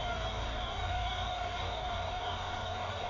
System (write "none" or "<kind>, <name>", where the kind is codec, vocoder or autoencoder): codec, DAC